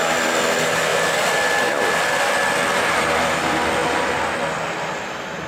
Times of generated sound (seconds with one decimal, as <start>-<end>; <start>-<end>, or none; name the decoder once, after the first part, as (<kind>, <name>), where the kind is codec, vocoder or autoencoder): 2.7-3.4 (vocoder, BigVGAN v2)